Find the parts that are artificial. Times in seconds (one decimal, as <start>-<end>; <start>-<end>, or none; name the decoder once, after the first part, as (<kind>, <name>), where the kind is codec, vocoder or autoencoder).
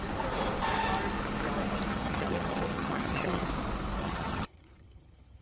1.9-3.4 (vocoder, HiFi-GAN); 4.0-5.4